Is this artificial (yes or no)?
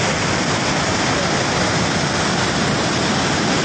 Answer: no